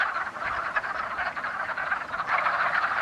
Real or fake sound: real